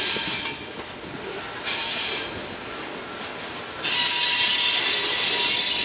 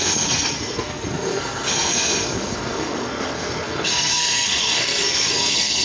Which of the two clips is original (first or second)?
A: first